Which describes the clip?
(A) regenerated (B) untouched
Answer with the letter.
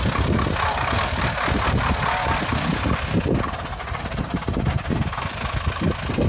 B